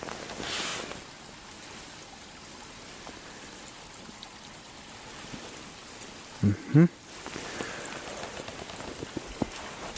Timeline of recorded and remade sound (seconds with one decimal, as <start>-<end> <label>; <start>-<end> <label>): 0.0-10.0 recorded